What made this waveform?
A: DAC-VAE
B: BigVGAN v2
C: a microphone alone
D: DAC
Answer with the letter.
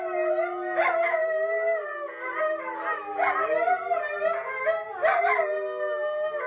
C